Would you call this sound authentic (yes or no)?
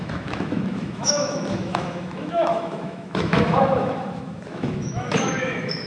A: no